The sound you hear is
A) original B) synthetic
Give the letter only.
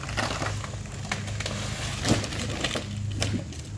A